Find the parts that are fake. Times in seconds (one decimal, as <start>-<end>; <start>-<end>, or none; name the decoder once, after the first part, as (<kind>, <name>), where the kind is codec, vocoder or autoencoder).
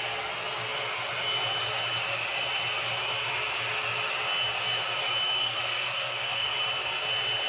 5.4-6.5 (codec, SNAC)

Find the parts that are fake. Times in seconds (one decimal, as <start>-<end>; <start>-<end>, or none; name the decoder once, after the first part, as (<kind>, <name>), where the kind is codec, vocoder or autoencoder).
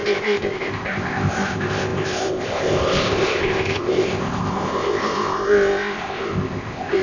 0.0-7.0 (codec, ZipCodec)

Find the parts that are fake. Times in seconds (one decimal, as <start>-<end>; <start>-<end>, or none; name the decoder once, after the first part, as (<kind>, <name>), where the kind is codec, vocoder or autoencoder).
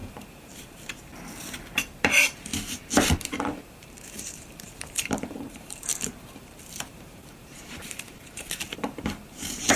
0.0-1.1 (vocoder, BigVGAN v2); 1.8-2.5; 3.2-9.8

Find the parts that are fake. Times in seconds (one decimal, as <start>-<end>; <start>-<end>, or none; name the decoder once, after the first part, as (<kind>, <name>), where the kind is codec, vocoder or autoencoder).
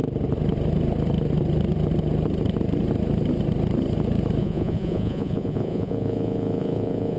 4.4-7.2 (vocoder, Vocos)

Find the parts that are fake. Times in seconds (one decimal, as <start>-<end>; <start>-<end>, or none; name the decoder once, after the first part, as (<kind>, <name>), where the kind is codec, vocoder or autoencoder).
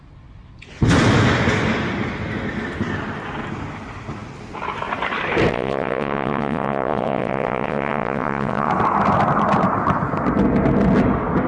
5.5-8.7 (vocoder, WaveNeXt)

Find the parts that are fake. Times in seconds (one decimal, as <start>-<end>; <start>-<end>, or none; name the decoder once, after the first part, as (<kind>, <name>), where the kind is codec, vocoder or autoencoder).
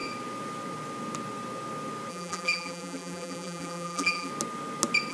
2.1-4.3 (vocoder, BigVGAN v2)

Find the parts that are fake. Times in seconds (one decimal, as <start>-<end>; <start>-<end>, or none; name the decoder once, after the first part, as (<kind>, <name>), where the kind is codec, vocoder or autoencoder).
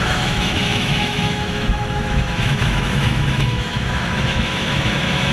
0.0-5.3 (autoencoder, DAC-VAE)